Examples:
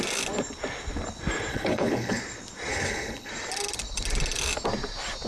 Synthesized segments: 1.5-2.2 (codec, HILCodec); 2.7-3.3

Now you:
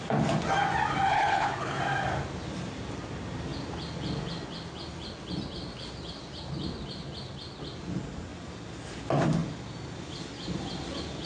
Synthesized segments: 1.1-1.8 (codec, HILCodec)

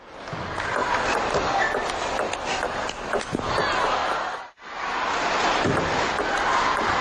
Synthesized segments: none

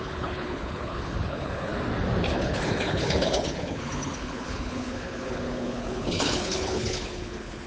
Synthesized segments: 0.0-1.7 (codec, HILCodec); 2.3-7.7